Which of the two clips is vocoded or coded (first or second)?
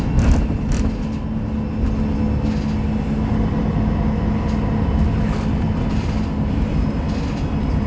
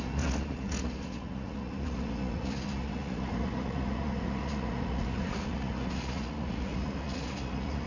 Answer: second